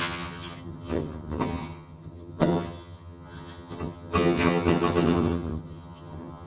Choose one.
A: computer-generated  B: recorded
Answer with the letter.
A